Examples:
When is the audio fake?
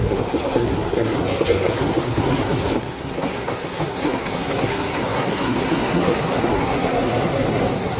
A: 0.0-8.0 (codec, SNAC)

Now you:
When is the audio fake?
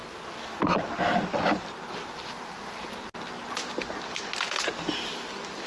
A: none